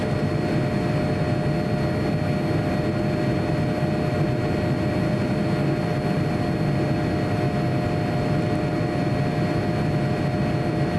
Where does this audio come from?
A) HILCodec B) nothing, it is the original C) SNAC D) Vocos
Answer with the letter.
B